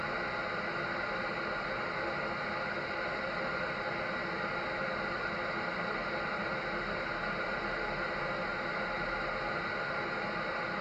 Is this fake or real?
real